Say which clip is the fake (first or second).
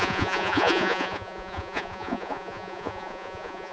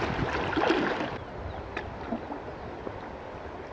first